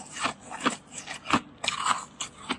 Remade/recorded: recorded